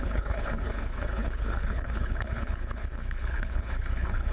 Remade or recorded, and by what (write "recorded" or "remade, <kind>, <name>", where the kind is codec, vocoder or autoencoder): remade, codec, HILCodec